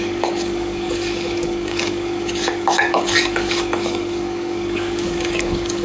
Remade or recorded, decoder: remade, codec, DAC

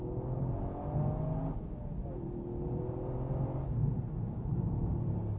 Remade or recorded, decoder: recorded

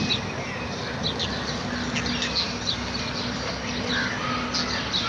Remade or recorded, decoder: recorded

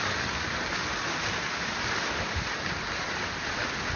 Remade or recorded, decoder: recorded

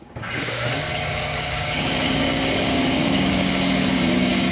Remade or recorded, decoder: remade, codec, DAC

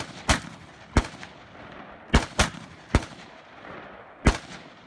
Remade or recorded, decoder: recorded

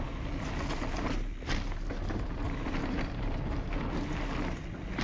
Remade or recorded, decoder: recorded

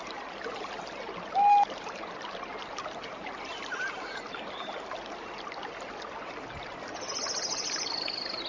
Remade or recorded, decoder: recorded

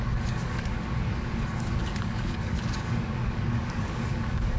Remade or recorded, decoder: remade, codec, DAC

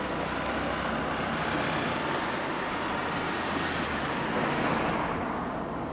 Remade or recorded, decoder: recorded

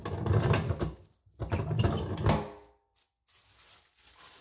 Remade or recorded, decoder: recorded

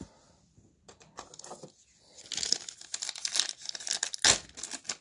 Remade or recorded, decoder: recorded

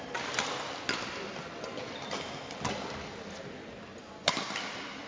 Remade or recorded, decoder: recorded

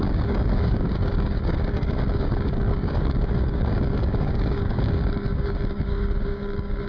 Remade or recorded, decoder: remade, codec, DAC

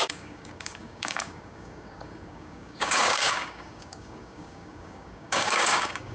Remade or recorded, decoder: remade, codec, DAC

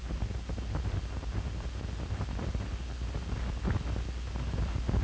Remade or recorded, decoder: recorded